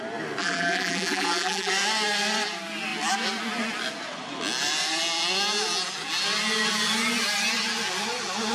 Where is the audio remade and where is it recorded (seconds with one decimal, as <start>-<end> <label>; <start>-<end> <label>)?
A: 0.0-0.4 recorded; 0.4-1.7 remade; 1.7-8.5 recorded